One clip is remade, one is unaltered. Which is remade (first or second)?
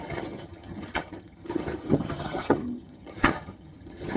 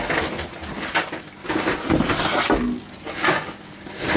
first